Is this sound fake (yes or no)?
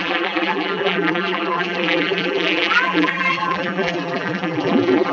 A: yes